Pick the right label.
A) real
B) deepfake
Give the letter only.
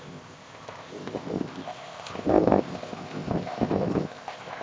B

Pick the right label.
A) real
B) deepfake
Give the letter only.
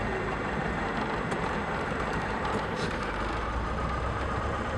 B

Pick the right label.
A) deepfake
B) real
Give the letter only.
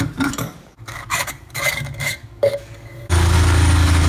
A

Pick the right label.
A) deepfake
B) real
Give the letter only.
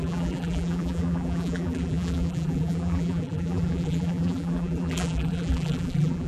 A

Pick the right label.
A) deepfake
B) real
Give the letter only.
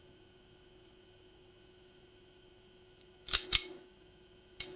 A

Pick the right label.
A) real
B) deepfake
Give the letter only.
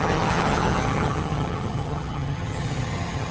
B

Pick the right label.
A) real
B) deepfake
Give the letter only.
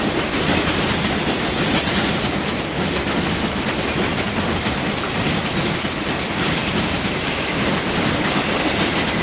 A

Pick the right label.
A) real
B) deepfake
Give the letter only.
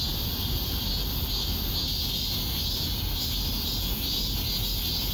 A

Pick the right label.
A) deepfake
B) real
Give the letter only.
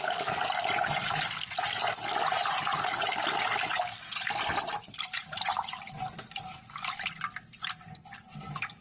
B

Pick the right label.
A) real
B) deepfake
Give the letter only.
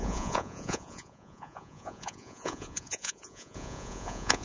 B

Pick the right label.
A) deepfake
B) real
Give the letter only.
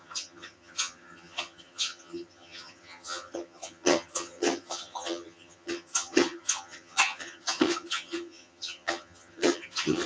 A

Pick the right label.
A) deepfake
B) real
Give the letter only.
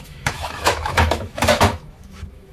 A